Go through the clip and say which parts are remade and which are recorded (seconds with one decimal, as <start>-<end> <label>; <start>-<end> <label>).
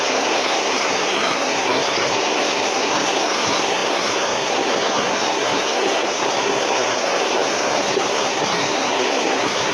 0.0-9.7 remade